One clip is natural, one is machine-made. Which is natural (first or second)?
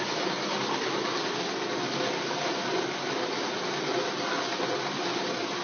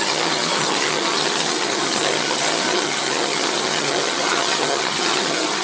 first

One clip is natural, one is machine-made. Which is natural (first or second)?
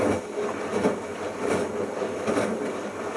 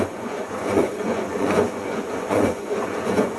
first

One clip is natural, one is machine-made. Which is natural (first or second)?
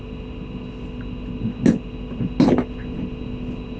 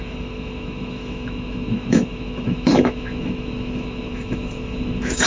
first